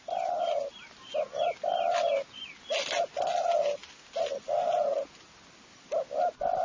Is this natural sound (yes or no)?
yes